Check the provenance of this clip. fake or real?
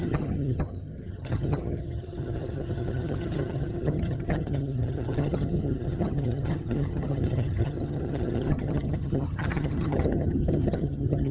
fake